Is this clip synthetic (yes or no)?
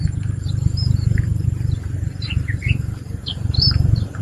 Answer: yes